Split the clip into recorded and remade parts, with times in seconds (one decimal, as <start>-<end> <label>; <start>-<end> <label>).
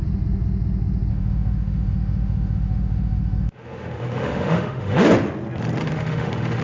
0.0-1.1 recorded; 1.1-5.1 remade; 5.1-5.8 recorded; 5.8-6.6 remade